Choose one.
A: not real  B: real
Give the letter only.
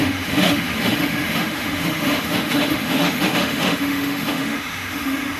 A